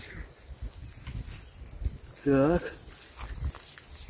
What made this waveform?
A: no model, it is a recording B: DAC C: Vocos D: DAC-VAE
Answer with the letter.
A